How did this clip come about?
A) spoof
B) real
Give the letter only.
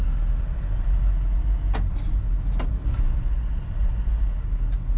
B